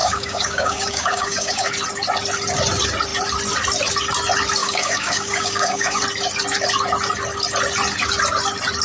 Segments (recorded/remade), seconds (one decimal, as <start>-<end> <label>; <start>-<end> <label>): 0.0-1.7 remade; 1.7-4.6 recorded; 4.6-6.0 remade; 6.0-8.8 recorded